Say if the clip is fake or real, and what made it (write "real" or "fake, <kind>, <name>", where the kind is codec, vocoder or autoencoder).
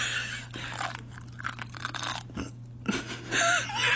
real